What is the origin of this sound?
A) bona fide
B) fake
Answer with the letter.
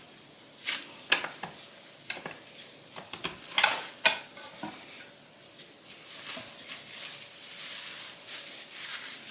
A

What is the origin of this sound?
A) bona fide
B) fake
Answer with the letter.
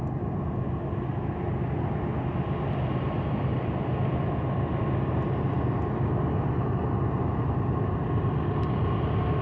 A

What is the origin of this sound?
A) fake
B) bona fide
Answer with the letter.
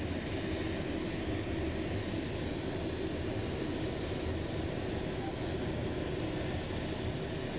B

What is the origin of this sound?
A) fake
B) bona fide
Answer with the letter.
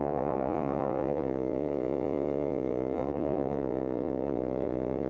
A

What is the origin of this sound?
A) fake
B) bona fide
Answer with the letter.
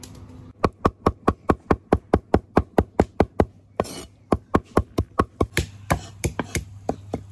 B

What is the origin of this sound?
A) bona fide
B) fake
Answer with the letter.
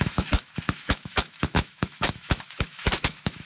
B